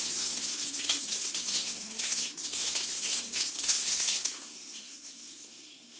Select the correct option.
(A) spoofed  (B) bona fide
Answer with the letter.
A